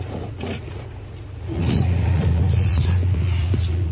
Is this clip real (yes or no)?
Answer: no